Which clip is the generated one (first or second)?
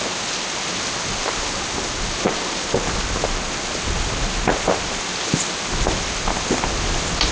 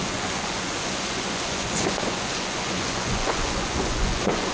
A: second